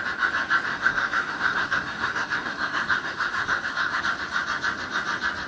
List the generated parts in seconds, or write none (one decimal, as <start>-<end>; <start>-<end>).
0.7-4.0